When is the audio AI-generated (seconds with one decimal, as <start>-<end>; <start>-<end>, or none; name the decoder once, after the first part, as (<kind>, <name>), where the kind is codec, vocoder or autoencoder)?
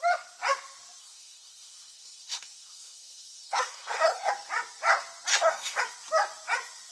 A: 1.0-4.3 (codec, SNAC); 5.3-5.8